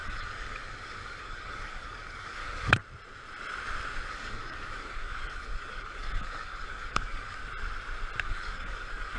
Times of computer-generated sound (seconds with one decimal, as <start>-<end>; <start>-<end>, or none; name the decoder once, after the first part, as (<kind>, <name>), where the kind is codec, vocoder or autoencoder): 0.0-2.8 (codec, DAC); 4.1-7.4; 8.2-9.2